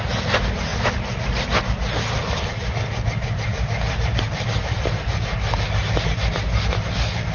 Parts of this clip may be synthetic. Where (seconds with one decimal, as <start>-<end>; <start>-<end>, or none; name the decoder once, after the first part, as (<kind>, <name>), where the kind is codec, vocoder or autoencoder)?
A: none